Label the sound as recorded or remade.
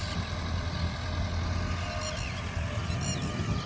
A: recorded